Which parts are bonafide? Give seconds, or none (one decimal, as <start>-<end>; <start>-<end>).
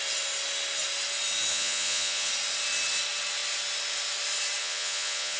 0.0-1.5; 2.3-4.6